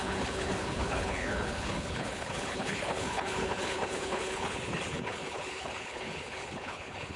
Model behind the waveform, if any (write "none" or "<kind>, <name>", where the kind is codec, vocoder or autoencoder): codec, HILCodec